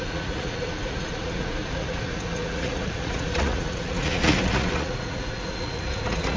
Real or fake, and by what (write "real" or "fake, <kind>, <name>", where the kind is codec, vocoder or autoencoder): fake, vocoder, Vocos